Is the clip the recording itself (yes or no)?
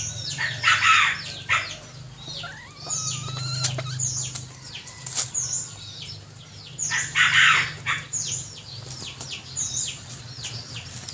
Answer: yes